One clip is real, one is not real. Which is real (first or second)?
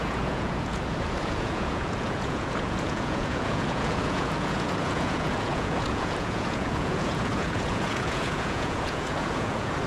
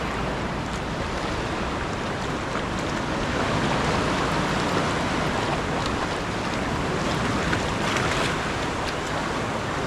second